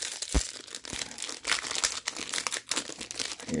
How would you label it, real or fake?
real